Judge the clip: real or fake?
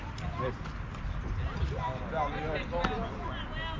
real